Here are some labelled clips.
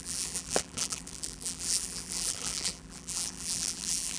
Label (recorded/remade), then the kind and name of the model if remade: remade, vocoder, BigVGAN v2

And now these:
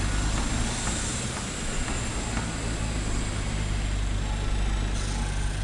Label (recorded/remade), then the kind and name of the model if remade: recorded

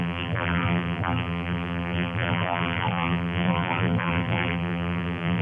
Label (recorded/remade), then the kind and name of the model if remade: remade, vocoder, BigVGAN v2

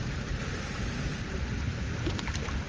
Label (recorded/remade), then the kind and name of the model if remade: remade, vocoder, BigVGAN v2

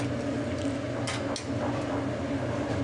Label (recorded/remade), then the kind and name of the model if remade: recorded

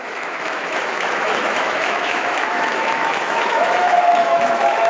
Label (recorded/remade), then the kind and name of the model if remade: remade, autoencoder, DAC-VAE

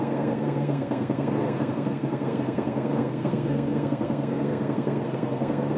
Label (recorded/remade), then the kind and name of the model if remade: remade, codec, SNAC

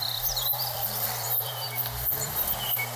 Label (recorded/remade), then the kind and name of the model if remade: remade, vocoder, BigVGAN v2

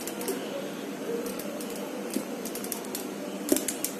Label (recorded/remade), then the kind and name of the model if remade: recorded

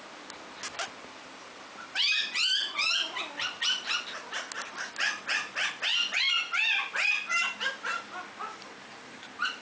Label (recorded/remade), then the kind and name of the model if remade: recorded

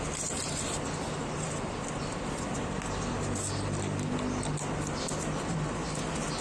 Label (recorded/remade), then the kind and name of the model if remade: recorded